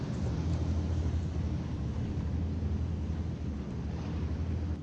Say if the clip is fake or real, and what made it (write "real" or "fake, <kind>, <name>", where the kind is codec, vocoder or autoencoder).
real